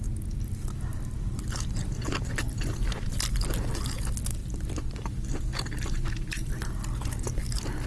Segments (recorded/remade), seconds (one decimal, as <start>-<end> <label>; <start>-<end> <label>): 0.0-4.4 recorded; 4.4-6.5 remade; 6.5-7.9 recorded